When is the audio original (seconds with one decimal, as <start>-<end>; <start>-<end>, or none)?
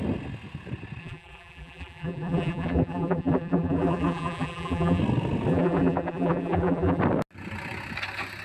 0.0-1.0; 5.0-5.5; 7.0-8.4